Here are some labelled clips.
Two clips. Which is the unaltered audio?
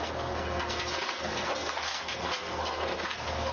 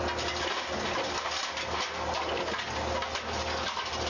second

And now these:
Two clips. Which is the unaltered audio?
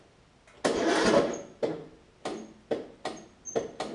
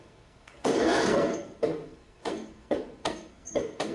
first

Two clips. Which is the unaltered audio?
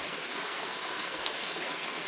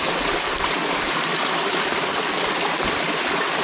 second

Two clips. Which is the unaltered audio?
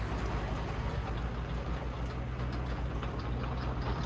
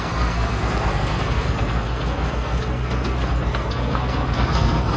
first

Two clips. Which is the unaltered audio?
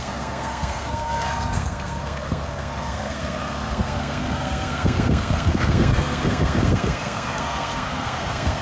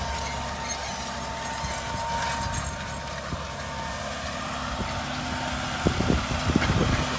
second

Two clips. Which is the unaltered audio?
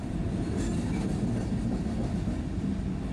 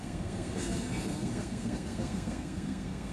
first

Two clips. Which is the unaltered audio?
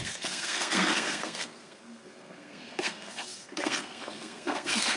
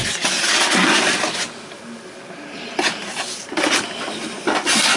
second